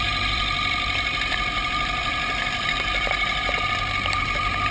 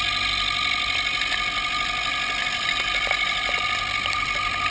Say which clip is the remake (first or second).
first